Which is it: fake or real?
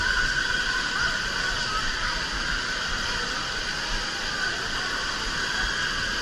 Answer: real